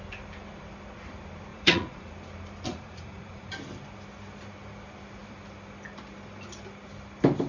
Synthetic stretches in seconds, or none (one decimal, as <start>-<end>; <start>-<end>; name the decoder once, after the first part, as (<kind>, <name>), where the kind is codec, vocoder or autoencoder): 1.5-2.1 (vocoder, Vocos); 2.7-3.5